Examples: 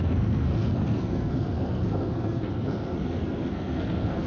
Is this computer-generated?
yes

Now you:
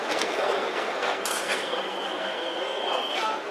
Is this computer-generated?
yes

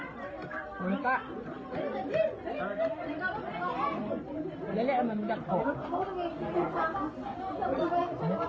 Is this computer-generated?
no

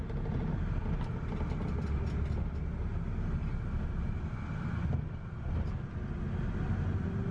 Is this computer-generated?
no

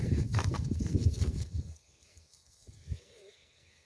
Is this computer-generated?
yes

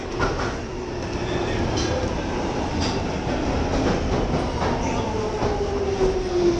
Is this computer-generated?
no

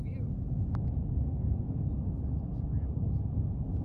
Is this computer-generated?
no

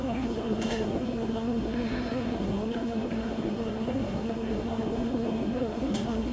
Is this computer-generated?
yes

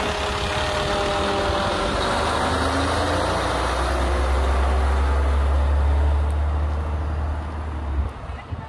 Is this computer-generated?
no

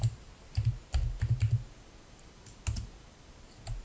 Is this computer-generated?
no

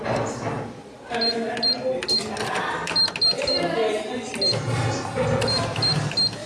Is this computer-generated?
no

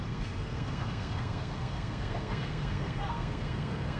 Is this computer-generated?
yes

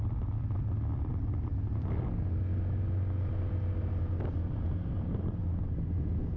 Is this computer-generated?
no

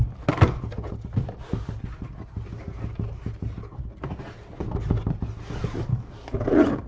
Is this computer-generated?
no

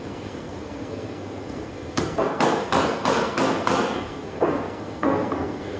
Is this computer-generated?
yes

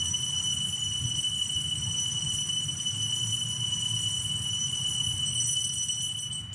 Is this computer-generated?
no